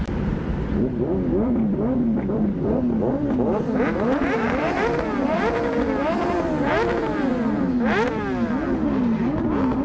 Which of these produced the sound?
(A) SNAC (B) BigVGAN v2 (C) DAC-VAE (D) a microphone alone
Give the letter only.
B